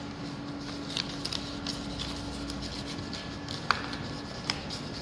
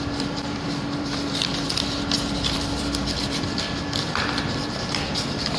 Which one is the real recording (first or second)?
first